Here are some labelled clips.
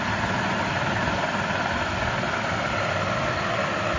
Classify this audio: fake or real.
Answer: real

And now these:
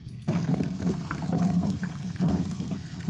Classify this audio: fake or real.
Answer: fake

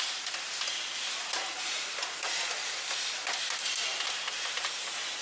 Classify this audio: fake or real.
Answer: real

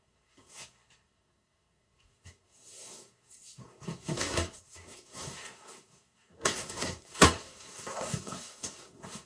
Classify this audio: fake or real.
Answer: fake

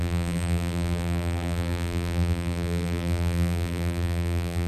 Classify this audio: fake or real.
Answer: fake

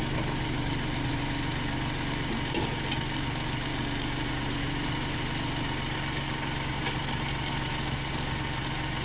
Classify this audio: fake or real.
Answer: real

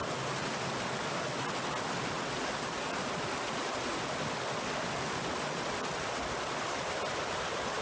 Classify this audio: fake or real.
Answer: real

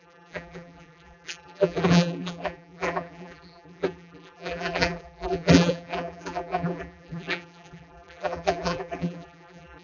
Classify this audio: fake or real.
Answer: fake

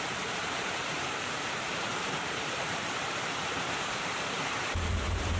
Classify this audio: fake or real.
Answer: fake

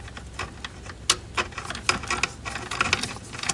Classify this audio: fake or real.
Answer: real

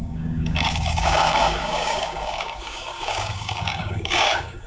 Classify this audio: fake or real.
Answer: fake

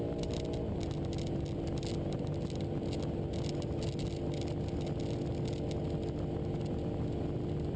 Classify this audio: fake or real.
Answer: real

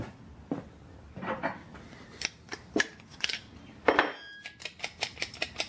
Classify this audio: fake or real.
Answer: real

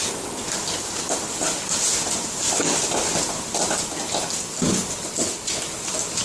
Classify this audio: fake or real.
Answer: real